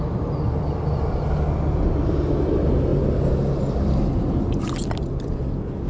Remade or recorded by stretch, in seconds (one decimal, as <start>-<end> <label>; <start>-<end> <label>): 0.0-5.9 recorded